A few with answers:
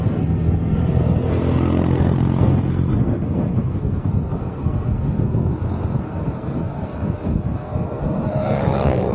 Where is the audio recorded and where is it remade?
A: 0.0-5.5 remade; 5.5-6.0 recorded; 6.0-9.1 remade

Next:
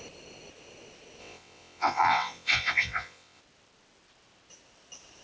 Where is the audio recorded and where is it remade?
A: 0.0-1.2 recorded; 1.2-3.4 remade; 3.4-5.2 recorded

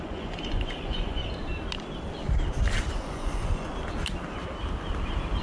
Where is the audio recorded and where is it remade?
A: 0.0-1.2 remade; 1.2-2.9 recorded; 2.9-3.7 remade; 3.7-5.4 recorded

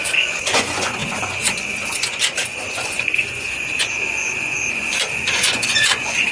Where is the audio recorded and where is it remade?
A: 0.0-6.3 remade

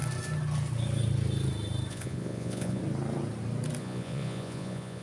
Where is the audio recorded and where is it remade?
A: 0.0-1.9 recorded; 1.9-2.8 remade; 2.8-3.8 recorded; 3.8-5.0 remade

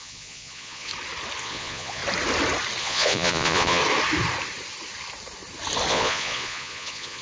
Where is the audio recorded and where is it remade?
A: 0.0-0.9 remade; 0.9-1.4 recorded; 1.4-2.0 remade; 2.0-2.8 recorded; 2.8-3.8 remade; 3.8-5.9 recorded; 5.9-7.2 remade

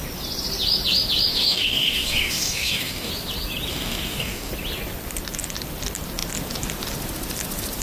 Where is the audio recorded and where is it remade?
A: 0.0-1.3 recorded; 1.3-3.1 remade; 3.1-3.7 recorded; 3.7-4.5 remade; 4.5-7.8 recorded